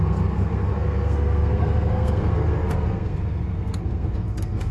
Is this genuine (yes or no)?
no